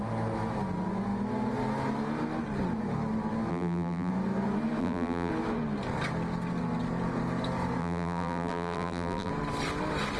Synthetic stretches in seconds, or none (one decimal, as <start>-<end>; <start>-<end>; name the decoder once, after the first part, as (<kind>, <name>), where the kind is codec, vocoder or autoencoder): 3.5-4.1 (vocoder, BigVGAN v2); 4.8-5.3; 7.8-9.3